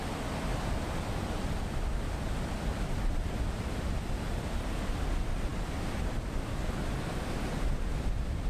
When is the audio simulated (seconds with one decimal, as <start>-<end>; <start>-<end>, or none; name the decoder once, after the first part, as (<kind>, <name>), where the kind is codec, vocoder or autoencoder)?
none